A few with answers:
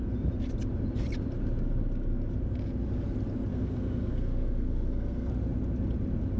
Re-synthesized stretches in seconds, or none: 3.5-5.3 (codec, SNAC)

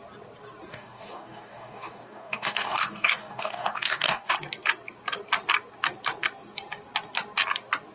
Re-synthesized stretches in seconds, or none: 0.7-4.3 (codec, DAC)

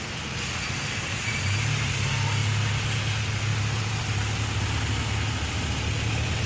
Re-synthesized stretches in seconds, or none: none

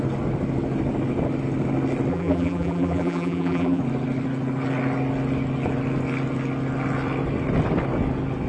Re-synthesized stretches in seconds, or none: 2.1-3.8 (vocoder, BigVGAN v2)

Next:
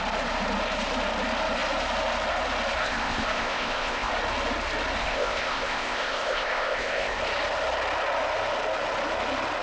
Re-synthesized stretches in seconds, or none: 2.8-4.1 (codec, ZipCodec); 5.0-7.2